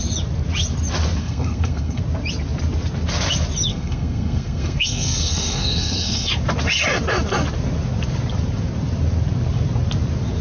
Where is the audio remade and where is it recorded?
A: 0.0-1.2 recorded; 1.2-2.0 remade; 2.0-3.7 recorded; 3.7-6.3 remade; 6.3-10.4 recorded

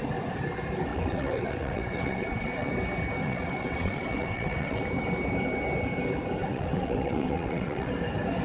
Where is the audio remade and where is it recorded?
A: 0.0-0.9 recorded; 0.9-2.7 remade; 2.7-3.2 recorded; 3.2-4.8 remade; 4.8-6.4 recorded; 6.4-7.9 remade; 7.9-8.4 recorded

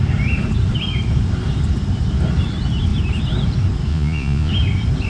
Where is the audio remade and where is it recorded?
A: 0.0-3.9 recorded; 3.9-4.5 remade; 4.5-5.1 recorded

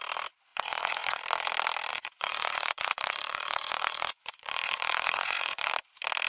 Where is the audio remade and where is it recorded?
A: 0.0-0.5 recorded; 0.5-1.2 remade; 1.2-1.9 recorded; 1.9-5.7 remade; 5.7-6.3 recorded

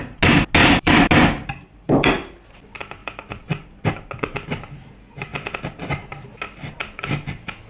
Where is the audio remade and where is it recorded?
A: 0.0-0.6 recorded; 0.6-1.1 remade; 1.1-3.0 recorded; 3.0-4.1 remade; 4.1-7.7 recorded

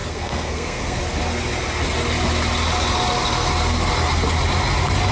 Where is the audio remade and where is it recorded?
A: 0.0-1.0 remade; 1.0-5.1 recorded

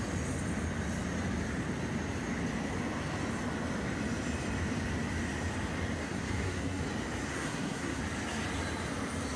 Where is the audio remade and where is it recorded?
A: 0.0-6.0 recorded; 6.0-6.8 remade; 6.8-7.3 recorded; 7.3-8.0 remade; 8.0-9.4 recorded